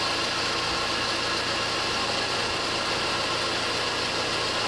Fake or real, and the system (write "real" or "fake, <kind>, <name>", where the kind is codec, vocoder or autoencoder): real